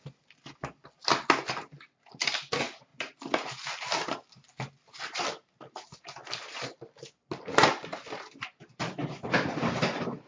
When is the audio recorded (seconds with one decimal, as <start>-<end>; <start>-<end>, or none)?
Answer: 0.0-10.3